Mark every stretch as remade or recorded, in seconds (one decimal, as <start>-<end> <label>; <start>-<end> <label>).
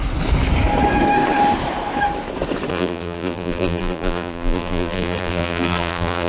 0.0-2.7 recorded; 2.7-6.3 remade